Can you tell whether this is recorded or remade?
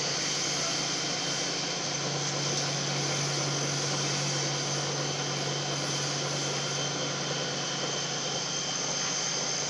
recorded